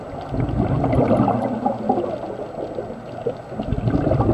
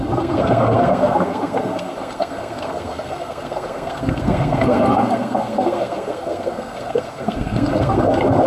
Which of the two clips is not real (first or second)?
second